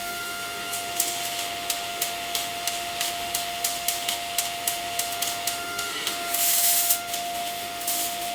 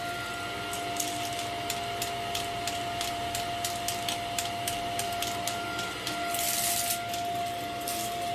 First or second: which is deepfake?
first